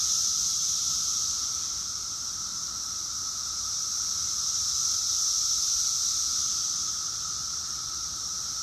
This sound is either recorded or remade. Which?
remade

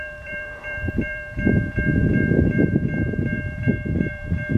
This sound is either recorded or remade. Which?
remade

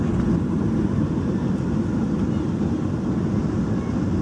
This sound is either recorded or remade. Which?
remade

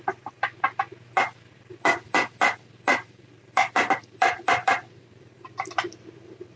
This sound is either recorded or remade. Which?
remade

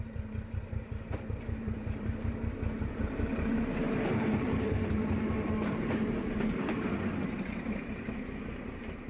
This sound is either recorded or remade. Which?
remade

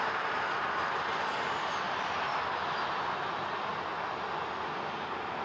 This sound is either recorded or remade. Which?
recorded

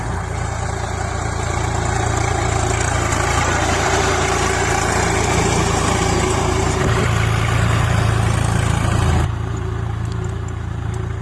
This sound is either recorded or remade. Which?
remade